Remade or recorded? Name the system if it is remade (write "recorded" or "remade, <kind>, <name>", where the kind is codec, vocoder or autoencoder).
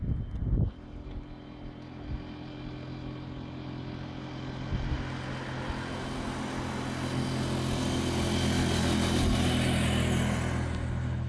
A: recorded